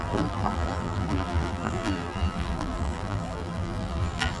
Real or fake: fake